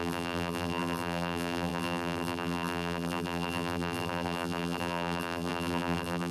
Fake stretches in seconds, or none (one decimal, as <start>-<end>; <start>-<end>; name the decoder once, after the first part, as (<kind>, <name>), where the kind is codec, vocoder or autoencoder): 0.0-6.3 (vocoder, BigVGAN v2)